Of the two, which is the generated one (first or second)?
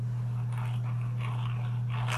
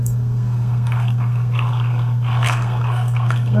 second